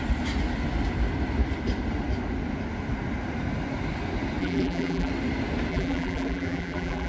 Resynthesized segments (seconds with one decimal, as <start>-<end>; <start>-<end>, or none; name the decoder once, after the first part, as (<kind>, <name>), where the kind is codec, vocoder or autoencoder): 4.4-5.1 (vocoder, BigVGAN v2); 5.7-7.1